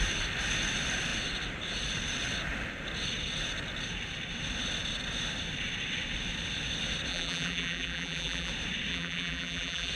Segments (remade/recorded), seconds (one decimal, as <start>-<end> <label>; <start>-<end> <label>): 0.0-7.1 recorded; 7.1-8.5 remade; 8.5-8.9 recorded; 8.9-9.9 remade